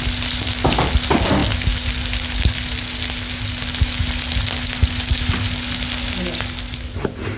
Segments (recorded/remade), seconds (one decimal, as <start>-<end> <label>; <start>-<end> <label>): 0.0-7.4 recorded